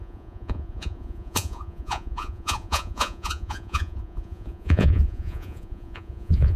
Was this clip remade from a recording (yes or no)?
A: yes